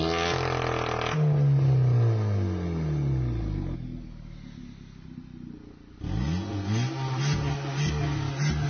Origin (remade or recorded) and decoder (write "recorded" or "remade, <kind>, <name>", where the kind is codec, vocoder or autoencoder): recorded